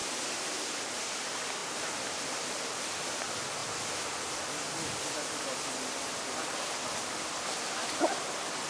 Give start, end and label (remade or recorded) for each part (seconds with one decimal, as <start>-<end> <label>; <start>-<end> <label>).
0.0-0.8 remade; 0.8-1.6 recorded; 1.6-2.2 remade; 2.2-8.7 recorded